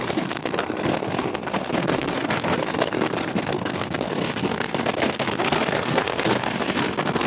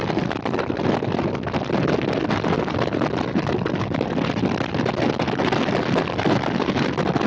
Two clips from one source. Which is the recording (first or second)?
second